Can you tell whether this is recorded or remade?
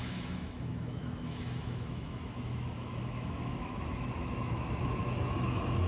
remade